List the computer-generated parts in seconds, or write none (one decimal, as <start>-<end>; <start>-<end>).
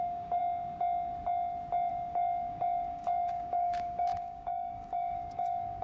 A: 0.0-0.4; 1.9-5.8